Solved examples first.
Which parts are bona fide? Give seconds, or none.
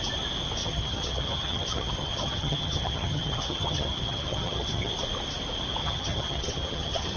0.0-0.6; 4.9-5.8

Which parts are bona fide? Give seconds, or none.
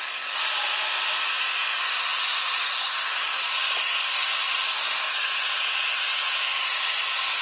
0.0-7.4